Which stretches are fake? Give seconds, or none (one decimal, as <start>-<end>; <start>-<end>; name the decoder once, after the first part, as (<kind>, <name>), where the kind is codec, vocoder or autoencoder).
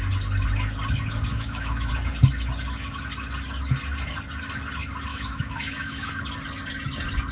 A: 1.3-1.9 (autoencoder, DAC-VAE); 5.1-6.1